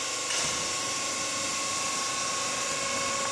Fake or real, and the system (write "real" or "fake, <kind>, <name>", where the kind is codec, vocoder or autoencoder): real